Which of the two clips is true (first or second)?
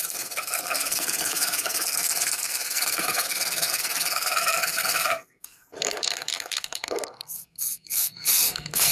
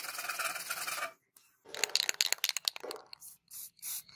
second